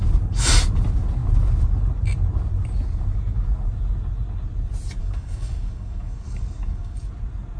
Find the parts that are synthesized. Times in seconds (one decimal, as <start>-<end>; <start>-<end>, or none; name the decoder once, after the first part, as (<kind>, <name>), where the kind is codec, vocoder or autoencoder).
5.0-7.1 (codec, DAC)